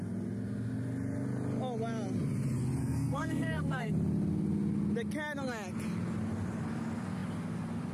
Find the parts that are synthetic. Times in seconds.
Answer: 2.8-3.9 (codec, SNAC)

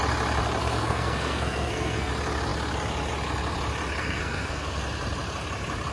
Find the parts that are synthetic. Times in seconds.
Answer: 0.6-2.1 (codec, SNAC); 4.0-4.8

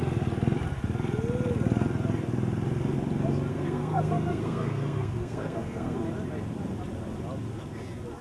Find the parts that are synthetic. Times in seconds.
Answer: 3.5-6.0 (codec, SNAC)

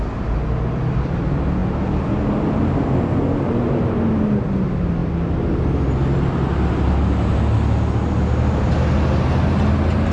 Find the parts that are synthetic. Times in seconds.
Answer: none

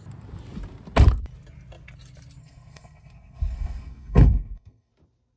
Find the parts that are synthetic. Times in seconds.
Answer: 2.4-4.9 (codec, SNAC)